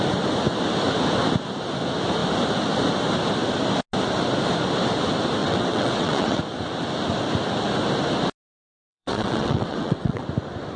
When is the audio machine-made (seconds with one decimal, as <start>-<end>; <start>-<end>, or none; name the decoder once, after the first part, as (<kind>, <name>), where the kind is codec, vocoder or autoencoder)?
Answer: 5.4-6.4 (vocoder, WaveNeXt); 8.8-10.2